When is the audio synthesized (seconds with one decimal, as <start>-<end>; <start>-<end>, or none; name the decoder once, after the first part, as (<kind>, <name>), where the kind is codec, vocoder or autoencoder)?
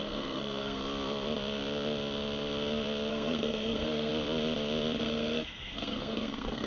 0.0-0.8 (codec, SNAC); 3.1-4.1; 5.0-6.7